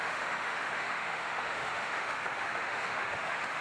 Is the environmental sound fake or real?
fake